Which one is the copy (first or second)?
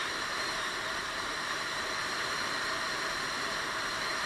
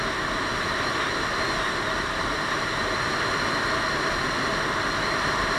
first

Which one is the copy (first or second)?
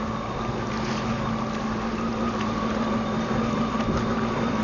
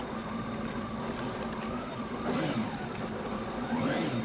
second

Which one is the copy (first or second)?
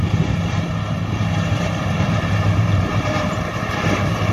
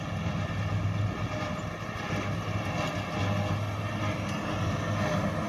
first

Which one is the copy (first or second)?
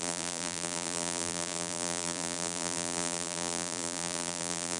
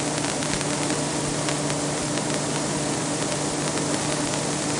first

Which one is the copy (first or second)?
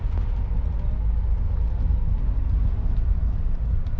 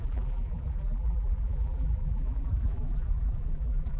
second